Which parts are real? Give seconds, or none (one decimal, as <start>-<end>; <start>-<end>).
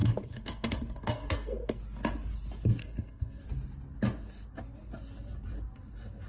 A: 1.8-2.8; 3.4-6.3